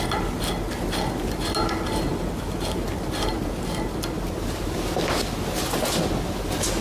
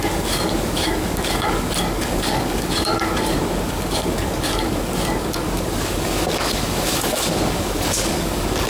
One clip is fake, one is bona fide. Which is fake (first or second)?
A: second